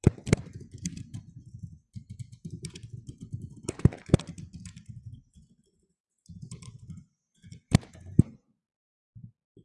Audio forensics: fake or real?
fake